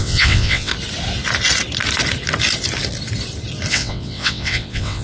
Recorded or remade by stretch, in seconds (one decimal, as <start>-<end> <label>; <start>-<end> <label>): 0.0-0.7 remade; 0.7-3.7 recorded; 3.7-5.0 remade